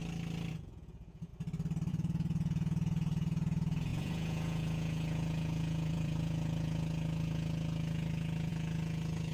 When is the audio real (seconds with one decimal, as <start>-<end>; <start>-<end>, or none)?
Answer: 0.0-0.5; 1.3-1.9